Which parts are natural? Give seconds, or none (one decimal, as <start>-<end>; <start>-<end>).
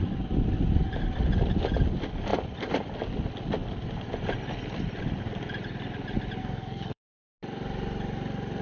0.0-6.4; 7.2-8.6